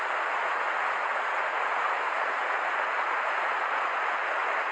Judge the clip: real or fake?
fake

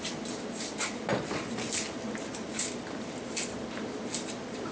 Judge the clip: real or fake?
real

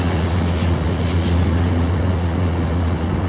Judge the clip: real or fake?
fake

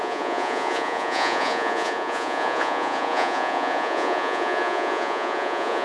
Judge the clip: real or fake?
fake